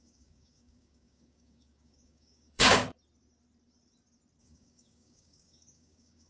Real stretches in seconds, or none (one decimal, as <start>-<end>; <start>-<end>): 2.8-4.4